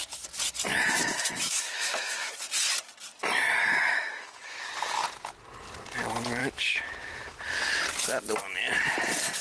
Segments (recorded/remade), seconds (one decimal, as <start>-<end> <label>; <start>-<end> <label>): 0.0-0.7 recorded; 0.7-2.3 remade; 2.3-3.7 recorded; 3.7-4.7 remade; 4.7-6.4 recorded; 6.4-7.4 remade; 7.4-9.4 recorded